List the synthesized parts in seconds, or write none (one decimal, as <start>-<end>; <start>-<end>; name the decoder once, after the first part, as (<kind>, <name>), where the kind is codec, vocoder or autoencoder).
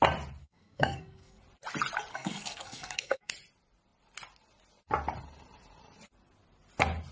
0.4-1.4 (codec, SNAC); 2.1-3.3